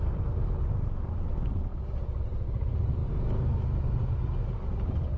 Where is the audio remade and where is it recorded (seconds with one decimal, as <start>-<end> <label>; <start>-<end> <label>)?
0.0-5.2 recorded